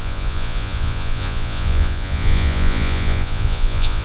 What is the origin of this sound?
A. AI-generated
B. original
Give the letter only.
A